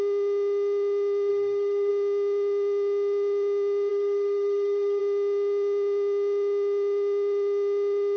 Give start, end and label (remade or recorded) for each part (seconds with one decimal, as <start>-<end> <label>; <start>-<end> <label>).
0.0-1.3 recorded; 1.3-1.9 remade; 1.9-3.9 recorded; 3.9-5.0 remade; 5.0-8.2 recorded